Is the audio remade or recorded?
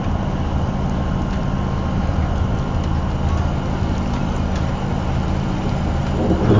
recorded